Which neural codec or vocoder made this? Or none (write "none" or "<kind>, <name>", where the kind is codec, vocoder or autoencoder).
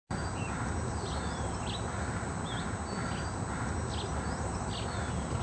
none